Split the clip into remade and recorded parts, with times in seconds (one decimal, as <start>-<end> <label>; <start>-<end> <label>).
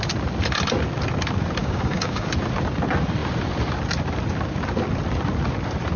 0.0-1.6 recorded; 1.6-2.3 remade; 2.3-6.0 recorded